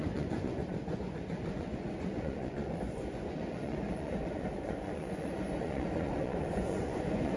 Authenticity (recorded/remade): remade